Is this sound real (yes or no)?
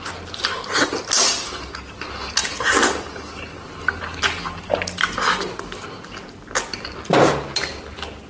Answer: yes